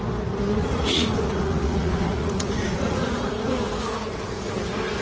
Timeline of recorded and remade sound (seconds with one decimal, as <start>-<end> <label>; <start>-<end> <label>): 0.0-0.6 recorded; 0.6-3.6 remade; 3.6-5.0 recorded